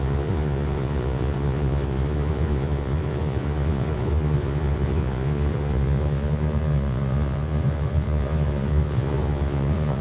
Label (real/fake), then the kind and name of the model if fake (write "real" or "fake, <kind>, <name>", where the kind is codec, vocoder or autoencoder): fake, vocoder, Vocos